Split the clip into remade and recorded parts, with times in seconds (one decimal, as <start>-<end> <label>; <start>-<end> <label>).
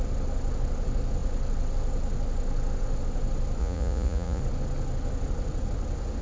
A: 0.0-3.6 recorded; 3.6-4.4 remade; 4.4-6.2 recorded